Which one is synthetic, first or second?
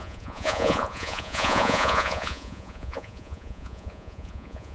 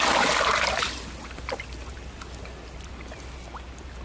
first